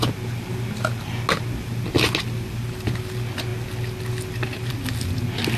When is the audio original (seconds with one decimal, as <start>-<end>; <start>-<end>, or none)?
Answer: 0.0-5.6